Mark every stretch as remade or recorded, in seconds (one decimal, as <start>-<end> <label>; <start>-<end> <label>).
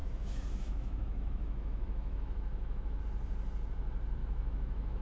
0.0-3.0 remade; 3.0-4.2 recorded; 4.2-5.0 remade